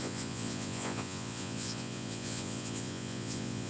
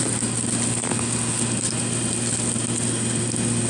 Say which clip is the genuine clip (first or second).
second